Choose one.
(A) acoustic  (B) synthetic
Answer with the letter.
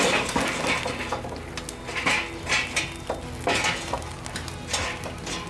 A